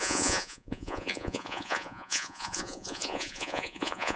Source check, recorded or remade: remade